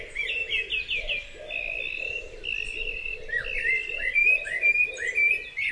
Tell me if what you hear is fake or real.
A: real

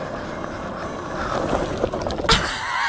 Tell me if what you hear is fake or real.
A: real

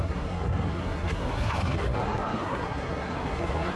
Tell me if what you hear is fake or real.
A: fake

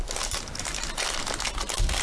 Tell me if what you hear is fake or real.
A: real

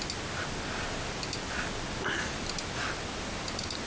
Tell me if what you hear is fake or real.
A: real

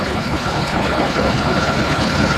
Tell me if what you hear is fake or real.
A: fake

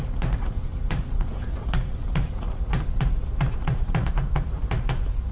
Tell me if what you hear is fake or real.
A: fake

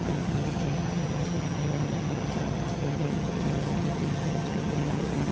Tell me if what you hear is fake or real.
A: fake